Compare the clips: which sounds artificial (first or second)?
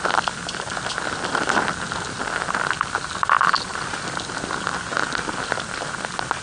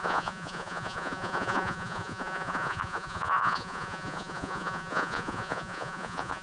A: second